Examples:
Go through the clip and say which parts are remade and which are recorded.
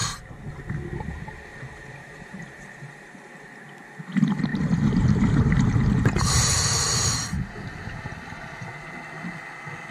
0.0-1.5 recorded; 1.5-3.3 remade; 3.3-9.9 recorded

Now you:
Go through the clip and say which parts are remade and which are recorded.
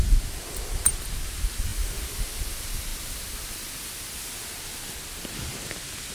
0.0-1.7 recorded; 1.7-2.2 remade; 2.2-2.9 recorded; 2.9-5.5 remade; 5.5-6.1 recorded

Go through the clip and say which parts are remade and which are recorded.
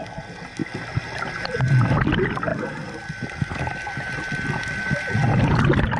0.0-6.0 recorded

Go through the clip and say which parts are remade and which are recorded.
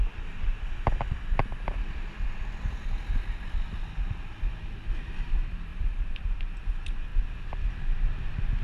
0.0-5.7 recorded; 5.7-6.4 remade; 6.4-8.6 recorded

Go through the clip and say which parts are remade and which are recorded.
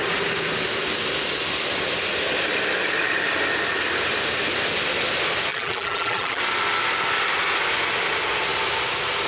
0.0-5.5 recorded; 5.5-6.4 remade; 6.4-9.3 recorded